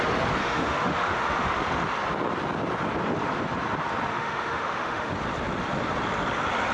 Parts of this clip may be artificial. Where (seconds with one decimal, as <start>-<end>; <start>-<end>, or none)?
0.4-1.5; 4.1-5.1